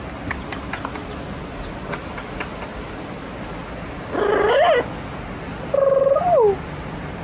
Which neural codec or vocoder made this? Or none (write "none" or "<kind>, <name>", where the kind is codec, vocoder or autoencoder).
none